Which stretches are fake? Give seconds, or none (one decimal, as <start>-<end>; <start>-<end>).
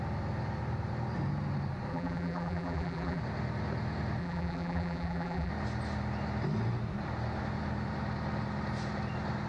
1.9-3.2; 4.2-5.5